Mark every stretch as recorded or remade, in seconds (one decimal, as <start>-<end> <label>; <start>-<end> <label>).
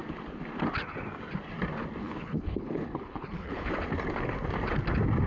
0.0-2.0 recorded; 2.0-3.7 remade; 3.7-5.3 recorded